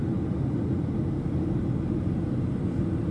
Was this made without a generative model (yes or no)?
yes